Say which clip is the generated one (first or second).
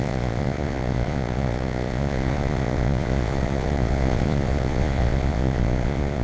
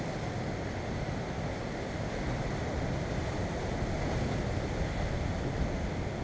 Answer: first